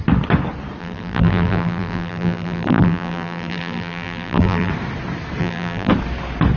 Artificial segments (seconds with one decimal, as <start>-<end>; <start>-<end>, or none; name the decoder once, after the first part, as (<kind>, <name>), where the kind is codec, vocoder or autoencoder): 0.8-4.7 (vocoder, BigVGAN v2); 5.4-5.9

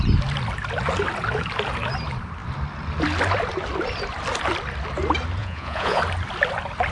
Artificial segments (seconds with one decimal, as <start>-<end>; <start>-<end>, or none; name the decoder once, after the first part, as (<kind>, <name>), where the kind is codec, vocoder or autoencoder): 5.4-6.0 (vocoder, Vocos)

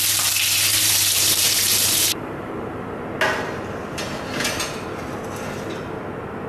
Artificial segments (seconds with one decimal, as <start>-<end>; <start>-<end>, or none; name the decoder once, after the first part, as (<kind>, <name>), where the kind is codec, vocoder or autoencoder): 0.7-2.5 (vocoder, BigVGAN v2)